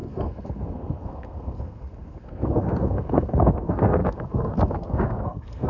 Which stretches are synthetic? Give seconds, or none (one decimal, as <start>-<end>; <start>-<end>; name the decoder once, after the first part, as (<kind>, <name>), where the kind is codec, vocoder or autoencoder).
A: 0.0-5.7 (codec, SNAC)